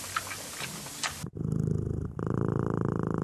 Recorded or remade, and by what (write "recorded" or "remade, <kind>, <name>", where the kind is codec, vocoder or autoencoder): recorded